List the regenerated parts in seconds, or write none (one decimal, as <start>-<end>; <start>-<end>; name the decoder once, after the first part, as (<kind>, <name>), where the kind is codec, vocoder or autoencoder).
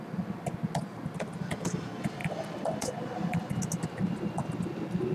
none